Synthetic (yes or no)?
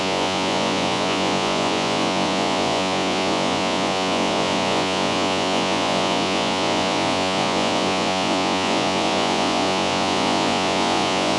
yes